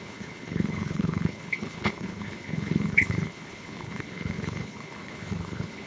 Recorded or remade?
remade